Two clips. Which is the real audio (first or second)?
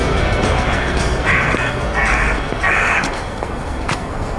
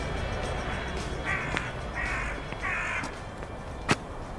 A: second